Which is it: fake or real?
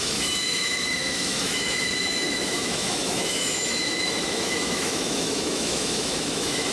fake